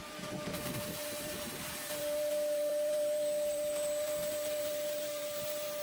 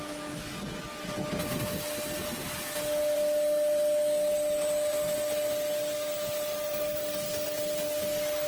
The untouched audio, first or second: second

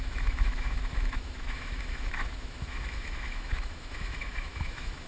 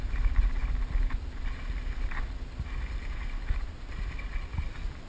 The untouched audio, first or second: second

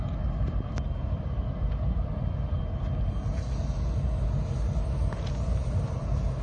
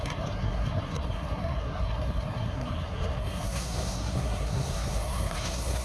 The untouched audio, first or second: first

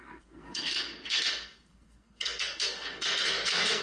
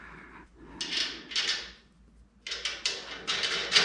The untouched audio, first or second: second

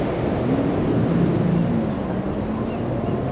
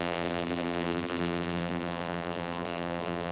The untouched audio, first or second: first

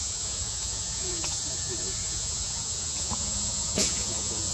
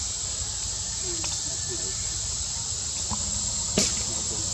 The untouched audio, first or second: second